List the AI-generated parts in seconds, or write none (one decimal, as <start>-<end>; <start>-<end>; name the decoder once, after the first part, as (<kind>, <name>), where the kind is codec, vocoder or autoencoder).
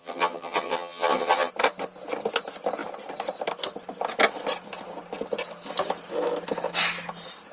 0.0-1.5 (vocoder, HiFi-GAN)